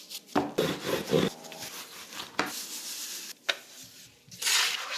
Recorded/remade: recorded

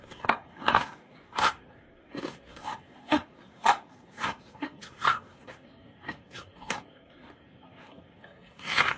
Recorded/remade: remade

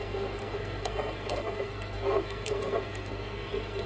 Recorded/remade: remade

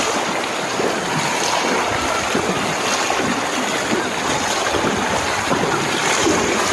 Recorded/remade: recorded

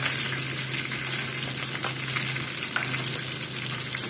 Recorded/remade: recorded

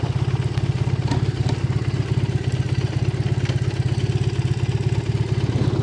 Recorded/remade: recorded